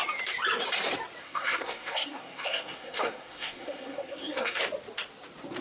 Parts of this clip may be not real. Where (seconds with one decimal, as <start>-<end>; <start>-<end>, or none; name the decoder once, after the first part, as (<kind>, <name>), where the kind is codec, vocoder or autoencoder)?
1.2-4.6 (codec, SNAC)